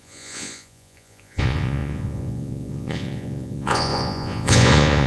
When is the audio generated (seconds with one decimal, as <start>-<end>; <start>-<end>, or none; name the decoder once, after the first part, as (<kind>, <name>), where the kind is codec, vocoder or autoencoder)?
0.0-5.1 (vocoder, Vocos)